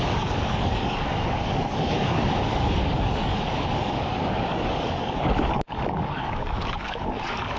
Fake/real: fake